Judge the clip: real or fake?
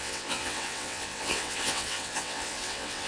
fake